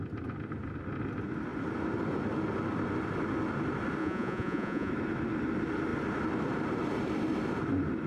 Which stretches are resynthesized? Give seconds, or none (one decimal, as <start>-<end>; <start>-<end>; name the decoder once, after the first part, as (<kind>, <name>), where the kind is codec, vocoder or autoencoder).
4.0-4.9 (vocoder, Vocos)